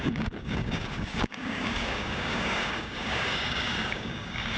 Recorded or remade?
remade